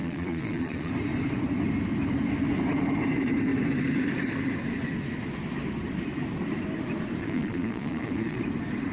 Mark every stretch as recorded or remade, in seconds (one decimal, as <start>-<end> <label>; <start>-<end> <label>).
0.0-0.9 remade; 0.9-7.2 recorded; 7.2-8.4 remade; 8.4-8.9 recorded